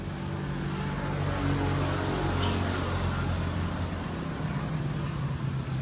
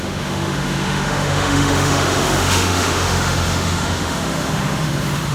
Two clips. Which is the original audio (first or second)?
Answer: first